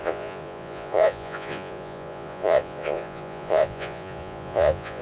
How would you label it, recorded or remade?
remade